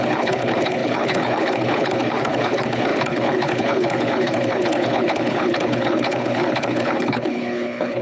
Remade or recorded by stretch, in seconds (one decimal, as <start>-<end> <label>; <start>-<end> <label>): 0.0-8.0 remade